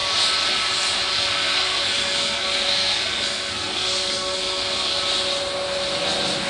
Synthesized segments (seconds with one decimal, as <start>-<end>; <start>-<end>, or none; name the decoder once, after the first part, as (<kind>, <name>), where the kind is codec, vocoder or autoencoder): 1.1-5.0 (codec, SNAC)